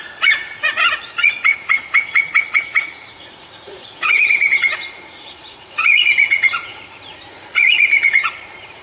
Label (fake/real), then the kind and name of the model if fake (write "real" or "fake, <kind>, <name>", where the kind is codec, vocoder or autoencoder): fake, vocoder, Vocos